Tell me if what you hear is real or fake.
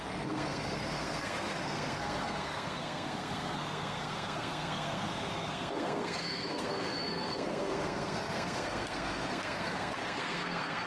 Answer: fake